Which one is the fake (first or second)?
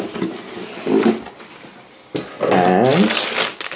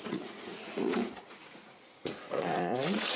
second